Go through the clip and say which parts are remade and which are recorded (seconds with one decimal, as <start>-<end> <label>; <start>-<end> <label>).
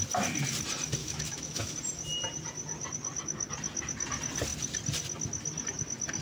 0.0-1.0 recorded; 1.0-1.7 remade; 1.7-6.2 recorded